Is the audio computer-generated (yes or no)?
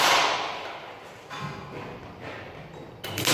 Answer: no